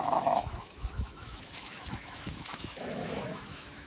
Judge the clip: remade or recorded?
remade